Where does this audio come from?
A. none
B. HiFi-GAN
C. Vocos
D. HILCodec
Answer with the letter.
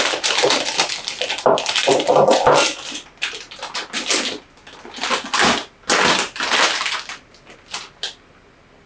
A